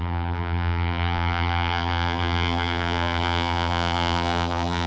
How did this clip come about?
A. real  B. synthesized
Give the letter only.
B